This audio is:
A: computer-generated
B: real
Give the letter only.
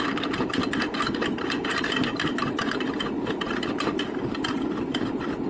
B